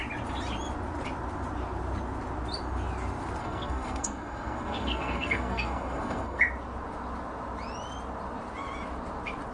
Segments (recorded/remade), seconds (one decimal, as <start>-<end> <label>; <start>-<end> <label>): 0.0-3.4 recorded; 3.4-6.4 remade; 6.4-9.5 recorded

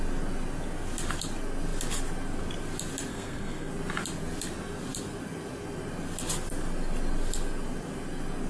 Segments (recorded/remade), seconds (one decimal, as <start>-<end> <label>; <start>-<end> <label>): 0.0-3.1 recorded; 3.1-3.7 remade; 3.7-8.5 recorded

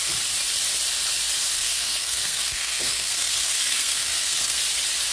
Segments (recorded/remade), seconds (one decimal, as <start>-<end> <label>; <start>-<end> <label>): 0.0-1.5 recorded; 1.5-4.6 remade; 4.6-5.1 recorded

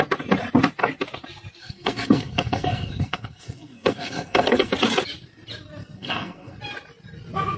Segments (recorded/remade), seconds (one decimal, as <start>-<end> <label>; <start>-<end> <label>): 0.0-1.6 recorded; 1.6-4.7 remade; 4.7-5.8 recorded; 5.8-6.6 remade; 6.6-7.6 recorded